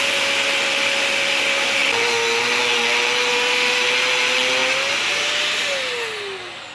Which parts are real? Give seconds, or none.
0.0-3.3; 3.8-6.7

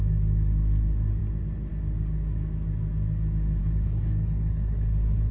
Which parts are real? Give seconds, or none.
0.0-3.6

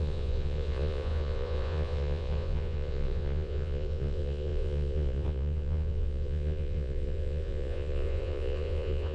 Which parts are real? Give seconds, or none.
none

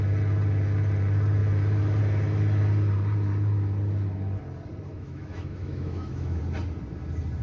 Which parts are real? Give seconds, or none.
0.0-4.9; 6.4-7.4

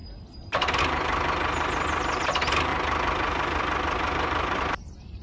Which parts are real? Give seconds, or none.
0.0-2.7

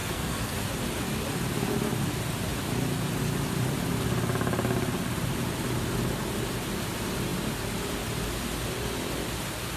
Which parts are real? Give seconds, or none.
0.7-9.8

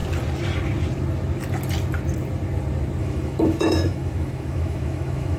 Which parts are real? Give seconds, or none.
0.0-3.0